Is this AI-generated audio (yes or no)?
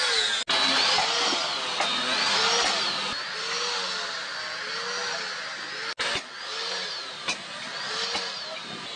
no